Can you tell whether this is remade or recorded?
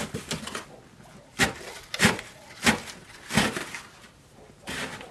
recorded